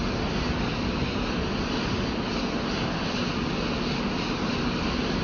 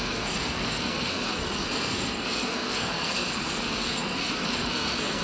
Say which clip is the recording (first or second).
first